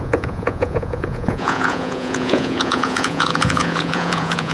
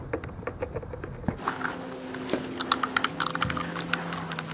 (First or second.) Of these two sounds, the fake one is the first